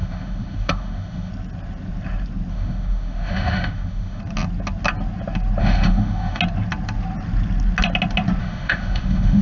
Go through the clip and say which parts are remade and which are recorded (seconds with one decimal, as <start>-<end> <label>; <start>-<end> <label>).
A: 0.0-1.3 remade; 1.3-2.5 recorded; 2.5-4.2 remade; 4.2-5.6 recorded; 5.6-6.4 remade; 6.4-8.4 recorded; 8.4-9.4 remade